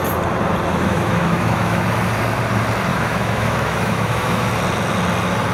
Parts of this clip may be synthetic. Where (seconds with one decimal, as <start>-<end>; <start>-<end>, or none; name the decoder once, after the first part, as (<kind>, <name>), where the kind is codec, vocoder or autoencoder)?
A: 0.7-1.8 (autoencoder, DAC-VAE); 2.9-4.5